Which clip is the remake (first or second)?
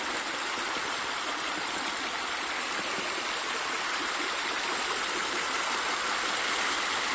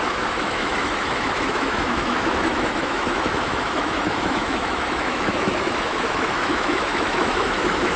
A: second